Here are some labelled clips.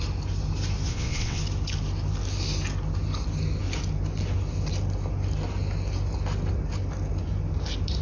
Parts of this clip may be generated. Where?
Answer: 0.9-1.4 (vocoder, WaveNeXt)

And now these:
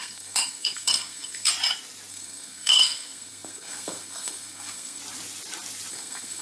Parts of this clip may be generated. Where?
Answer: 0.0-1.5 (codec, SNAC); 2.1-5.0; 5.9-6.4

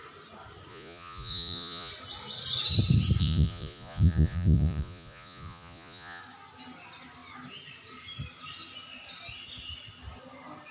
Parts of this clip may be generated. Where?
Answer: 0.7-1.9 (vocoder, Vocos); 3.2-6.2

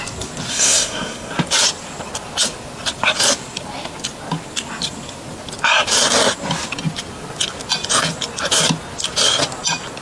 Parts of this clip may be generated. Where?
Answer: 0.5-1.3 (codec, SNAC)

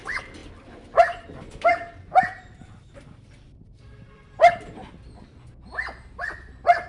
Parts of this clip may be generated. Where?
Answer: 0.4-4.5 (vocoder, BigVGAN v2)